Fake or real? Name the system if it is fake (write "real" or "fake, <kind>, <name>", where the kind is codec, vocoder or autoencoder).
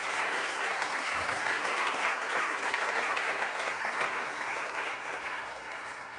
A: fake, codec, SNAC